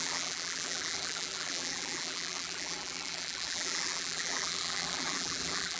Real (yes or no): no